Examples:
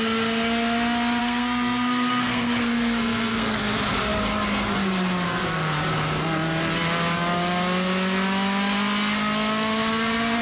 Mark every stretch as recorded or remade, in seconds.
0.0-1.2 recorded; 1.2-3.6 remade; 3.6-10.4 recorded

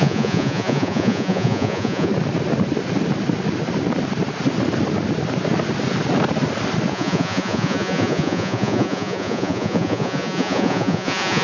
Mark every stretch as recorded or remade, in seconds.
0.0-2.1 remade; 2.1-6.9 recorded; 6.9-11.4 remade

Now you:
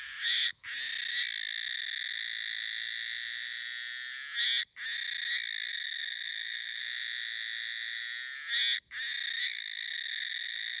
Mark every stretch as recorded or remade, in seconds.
0.0-0.7 remade; 0.7-5.7 recorded; 5.7-6.8 remade; 6.8-9.4 recorded; 9.4-10.8 remade